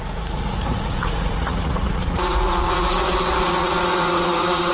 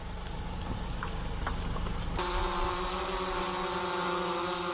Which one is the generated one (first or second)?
first